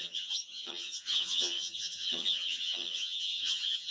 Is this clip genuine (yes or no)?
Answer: no